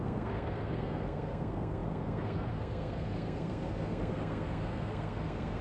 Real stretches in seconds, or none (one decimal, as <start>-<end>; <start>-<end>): none